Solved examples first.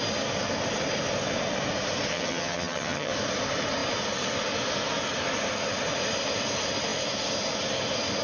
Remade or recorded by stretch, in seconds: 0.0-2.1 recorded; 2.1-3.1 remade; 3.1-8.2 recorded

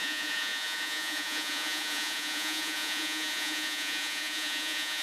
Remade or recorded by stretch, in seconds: 0.0-5.0 remade

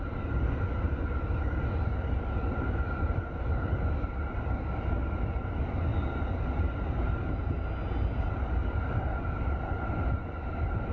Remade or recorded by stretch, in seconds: 0.0-10.9 recorded

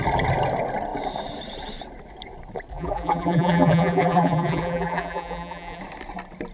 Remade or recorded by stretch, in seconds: 0.0-2.7 recorded; 2.7-5.8 remade; 5.8-6.5 recorded